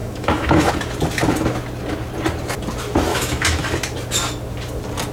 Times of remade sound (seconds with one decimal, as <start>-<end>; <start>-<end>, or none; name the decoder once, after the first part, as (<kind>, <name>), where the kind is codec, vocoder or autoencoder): 0.0-0.7 (autoencoder, DAC-VAE); 3.1-3.6